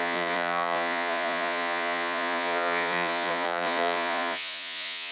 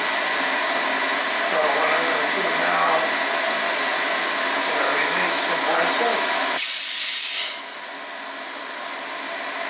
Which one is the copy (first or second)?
first